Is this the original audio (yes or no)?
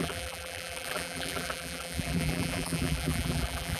no